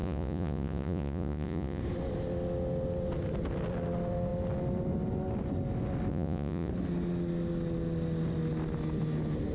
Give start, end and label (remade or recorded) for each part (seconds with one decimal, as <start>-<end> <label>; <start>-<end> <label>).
0.0-1.8 remade; 1.8-6.1 recorded; 6.1-6.7 remade; 6.7-9.5 recorded